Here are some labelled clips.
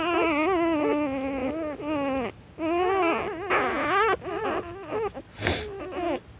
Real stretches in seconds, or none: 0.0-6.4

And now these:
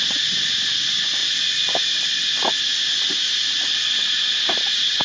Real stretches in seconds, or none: 0.0-5.0